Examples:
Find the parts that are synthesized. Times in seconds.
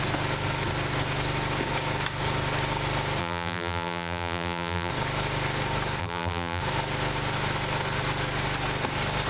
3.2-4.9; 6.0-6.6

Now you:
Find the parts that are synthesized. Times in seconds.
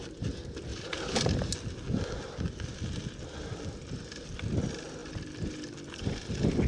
0.7-1.3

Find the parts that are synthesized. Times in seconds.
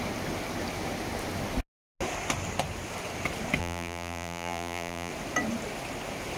3.6-5.1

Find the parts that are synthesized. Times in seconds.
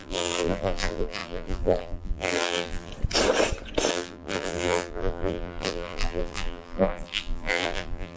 0.0-2.9; 3.9-8.2